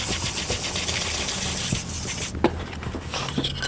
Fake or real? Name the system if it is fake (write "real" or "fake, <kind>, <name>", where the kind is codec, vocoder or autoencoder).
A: real